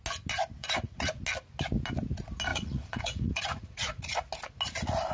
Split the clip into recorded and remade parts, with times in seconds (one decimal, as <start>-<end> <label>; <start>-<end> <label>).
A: 0.0-0.6 recorded; 0.6-1.2 remade; 1.2-2.5 recorded; 2.5-4.3 remade; 4.3-5.1 recorded